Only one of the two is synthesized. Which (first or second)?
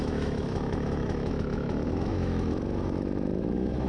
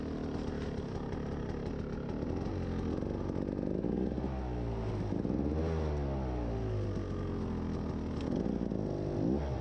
first